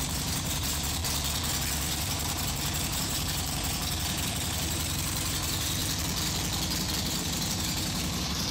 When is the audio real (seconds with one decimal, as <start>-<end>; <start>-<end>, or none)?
1.0-1.6; 5.8-7.0